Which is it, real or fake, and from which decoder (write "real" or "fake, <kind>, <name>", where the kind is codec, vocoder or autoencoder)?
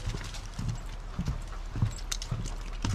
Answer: real